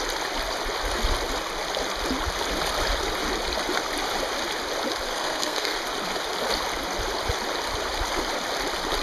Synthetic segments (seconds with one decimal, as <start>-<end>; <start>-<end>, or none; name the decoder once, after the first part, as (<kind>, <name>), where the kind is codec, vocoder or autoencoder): 5.1-5.8 (codec, SNAC)